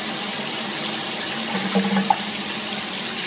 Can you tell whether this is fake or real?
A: real